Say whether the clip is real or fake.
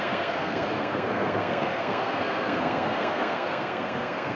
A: fake